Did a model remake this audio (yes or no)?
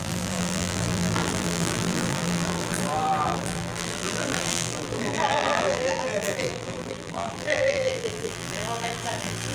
yes